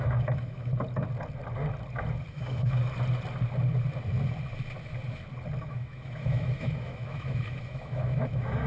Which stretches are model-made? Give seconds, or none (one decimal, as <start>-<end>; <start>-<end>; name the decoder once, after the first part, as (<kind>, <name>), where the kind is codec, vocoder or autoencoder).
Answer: 0.0-0.7 (autoencoder, DAC-VAE); 2.3-2.8; 5.6-8.7

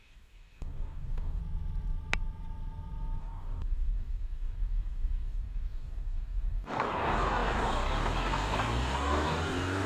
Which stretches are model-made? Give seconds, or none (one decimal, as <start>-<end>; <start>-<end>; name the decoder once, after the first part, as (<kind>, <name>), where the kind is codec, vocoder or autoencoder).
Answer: 0.0-1.4 (codec, DAC); 3.2-9.9

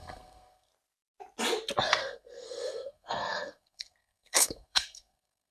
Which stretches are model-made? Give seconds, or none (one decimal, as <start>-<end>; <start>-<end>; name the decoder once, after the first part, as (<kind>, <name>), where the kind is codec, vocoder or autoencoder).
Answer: 0.0-0.7 (codec, SNAC); 1.9-5.5

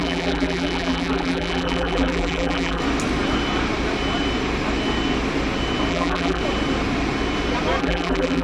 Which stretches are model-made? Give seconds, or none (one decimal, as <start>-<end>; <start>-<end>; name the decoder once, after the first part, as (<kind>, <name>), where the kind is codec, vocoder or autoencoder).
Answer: 0.0-2.8 (vocoder, BigVGAN v2); 5.9-6.4; 7.8-8.4

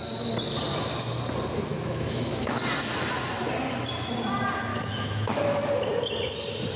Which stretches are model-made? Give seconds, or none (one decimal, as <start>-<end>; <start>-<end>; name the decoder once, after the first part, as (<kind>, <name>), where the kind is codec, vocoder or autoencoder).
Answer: 1.7-2.6 (autoencoder, DAC-VAE); 4.7-5.7